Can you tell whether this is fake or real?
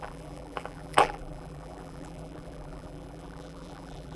fake